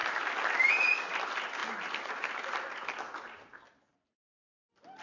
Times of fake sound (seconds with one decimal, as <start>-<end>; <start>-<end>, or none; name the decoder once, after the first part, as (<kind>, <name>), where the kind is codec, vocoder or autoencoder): 0.0-0.7 (vocoder, BigVGAN v2); 1.6-2.1